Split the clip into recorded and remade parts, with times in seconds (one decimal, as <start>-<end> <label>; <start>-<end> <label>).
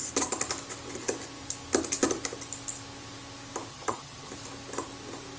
0.0-3.7 recorded; 3.7-4.3 remade; 4.3-5.4 recorded